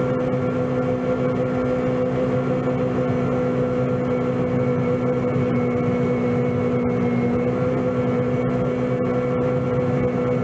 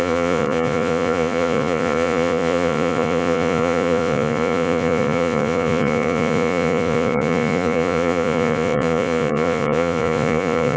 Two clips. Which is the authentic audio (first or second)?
first